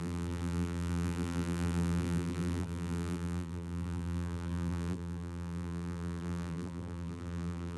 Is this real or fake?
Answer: fake